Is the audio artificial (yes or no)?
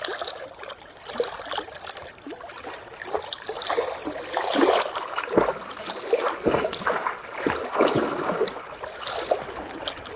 no